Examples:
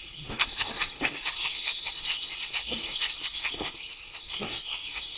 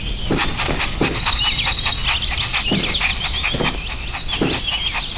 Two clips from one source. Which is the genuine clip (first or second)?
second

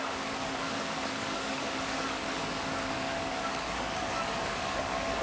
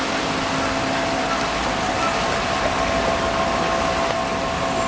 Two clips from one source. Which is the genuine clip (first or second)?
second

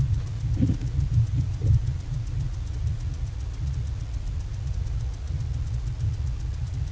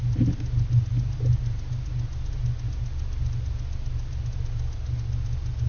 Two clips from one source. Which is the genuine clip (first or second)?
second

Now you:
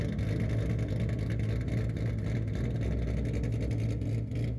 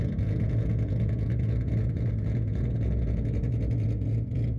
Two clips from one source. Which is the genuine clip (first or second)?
first